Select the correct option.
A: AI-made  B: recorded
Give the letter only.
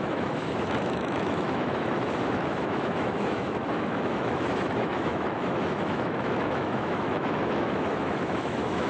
A